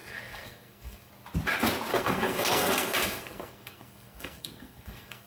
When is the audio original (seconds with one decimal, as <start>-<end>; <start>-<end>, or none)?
1.1-1.9